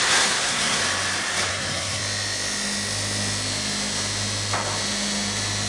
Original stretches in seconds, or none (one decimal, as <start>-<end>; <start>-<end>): 0.8-1.5; 2.0-5.7